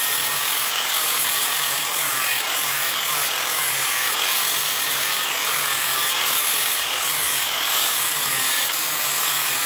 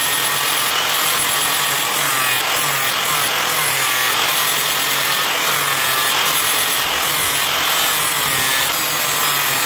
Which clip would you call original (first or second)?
second